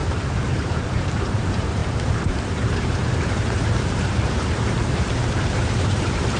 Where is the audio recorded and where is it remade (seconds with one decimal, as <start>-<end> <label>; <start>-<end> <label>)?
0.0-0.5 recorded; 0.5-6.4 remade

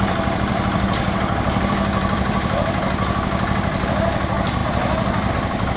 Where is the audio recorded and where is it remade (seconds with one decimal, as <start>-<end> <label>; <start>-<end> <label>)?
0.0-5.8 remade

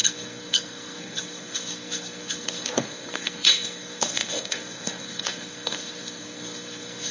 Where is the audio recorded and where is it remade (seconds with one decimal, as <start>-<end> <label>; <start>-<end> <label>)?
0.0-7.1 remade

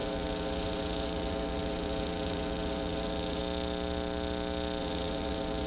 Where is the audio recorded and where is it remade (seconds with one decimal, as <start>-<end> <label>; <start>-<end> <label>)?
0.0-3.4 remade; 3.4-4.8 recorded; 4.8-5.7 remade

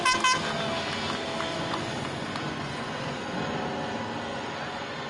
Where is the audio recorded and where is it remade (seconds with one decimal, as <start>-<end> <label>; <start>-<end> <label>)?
0.0-1.5 recorded; 1.5-3.6 remade; 3.6-4.3 recorded; 4.3-5.1 remade

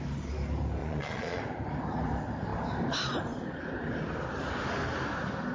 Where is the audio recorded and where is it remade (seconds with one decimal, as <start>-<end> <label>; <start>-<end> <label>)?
0.0-0.8 recorded; 0.8-1.4 remade; 1.4-5.5 recorded

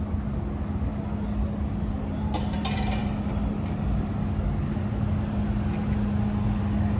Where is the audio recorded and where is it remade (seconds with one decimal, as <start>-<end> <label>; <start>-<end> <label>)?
0.0-7.0 recorded